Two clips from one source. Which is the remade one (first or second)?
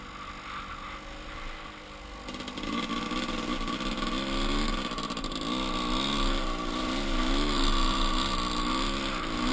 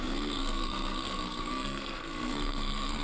second